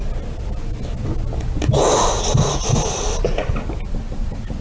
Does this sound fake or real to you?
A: real